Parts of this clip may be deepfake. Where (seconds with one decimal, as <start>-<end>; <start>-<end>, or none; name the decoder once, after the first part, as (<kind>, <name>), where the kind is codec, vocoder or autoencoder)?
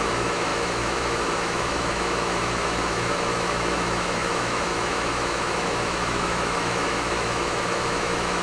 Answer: 0.0-8.4 (autoencoder, DAC-VAE)